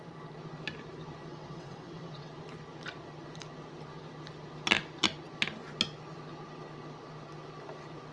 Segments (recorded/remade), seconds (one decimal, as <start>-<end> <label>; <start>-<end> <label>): 0.0-1.3 recorded; 1.3-2.3 remade; 2.3-8.1 recorded